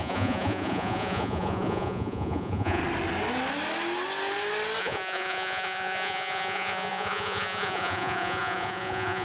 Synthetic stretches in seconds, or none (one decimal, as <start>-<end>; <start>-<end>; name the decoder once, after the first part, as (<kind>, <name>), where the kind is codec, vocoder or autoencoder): 0.0-2.8 (vocoder, Vocos); 4.8-9.2